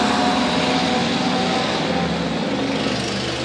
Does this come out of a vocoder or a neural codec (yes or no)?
no